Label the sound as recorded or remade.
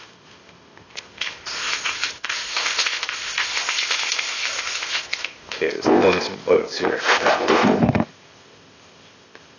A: remade